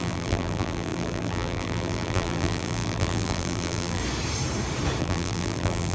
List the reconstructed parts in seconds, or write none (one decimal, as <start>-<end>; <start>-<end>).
0.0-4.0; 5.0-5.9